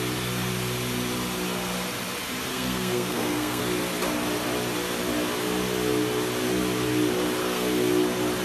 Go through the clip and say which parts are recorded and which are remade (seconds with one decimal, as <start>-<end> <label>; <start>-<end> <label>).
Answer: 0.0-2.5 recorded; 2.5-3.6 remade; 3.6-7.4 recorded; 7.4-7.9 remade; 7.9-8.4 recorded